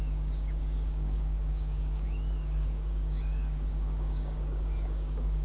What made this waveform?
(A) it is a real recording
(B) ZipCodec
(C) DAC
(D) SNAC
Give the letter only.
C